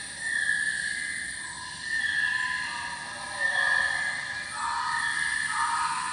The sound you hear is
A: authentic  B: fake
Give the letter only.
A